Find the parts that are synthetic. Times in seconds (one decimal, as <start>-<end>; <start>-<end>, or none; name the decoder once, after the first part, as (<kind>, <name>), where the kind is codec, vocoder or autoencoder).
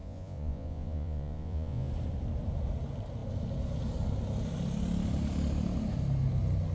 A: 0.0-1.9 (vocoder, Vocos)